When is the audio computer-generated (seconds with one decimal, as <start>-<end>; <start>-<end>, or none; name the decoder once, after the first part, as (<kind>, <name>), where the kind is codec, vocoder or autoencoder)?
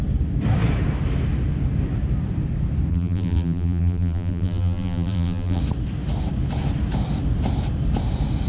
2.9-5.6 (vocoder, BigVGAN v2)